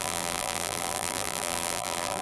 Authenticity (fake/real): fake